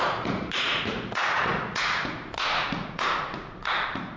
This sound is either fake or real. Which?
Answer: fake